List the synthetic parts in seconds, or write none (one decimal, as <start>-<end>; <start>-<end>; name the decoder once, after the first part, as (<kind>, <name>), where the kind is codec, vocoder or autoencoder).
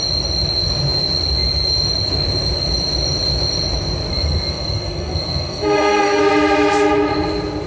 4.1-6.2 (codec, SNAC)